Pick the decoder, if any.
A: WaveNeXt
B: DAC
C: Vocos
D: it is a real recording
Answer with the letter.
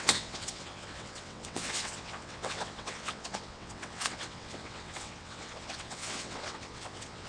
A